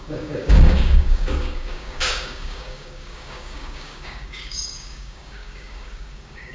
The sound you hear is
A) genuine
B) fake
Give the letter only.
B